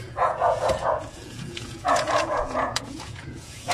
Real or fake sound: fake